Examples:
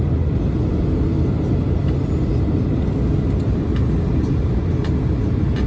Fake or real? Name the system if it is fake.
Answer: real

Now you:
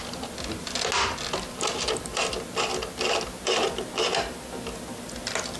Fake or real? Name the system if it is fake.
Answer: real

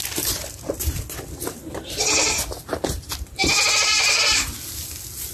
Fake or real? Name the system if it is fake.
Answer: real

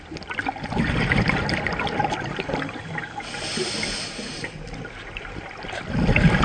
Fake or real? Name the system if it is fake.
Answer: real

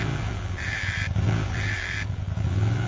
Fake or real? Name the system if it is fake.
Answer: fake, vocoder, BigVGAN v2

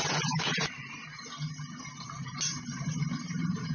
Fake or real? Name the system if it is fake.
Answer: fake, vocoder, BigVGAN v2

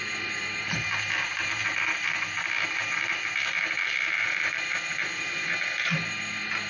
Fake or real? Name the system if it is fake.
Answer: fake, vocoder, BigVGAN v2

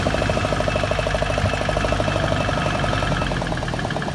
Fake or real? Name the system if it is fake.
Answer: real